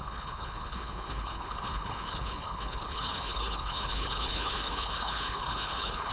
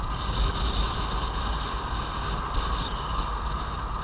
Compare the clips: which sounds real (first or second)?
second